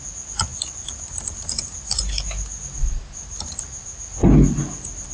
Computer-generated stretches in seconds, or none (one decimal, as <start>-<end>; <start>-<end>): none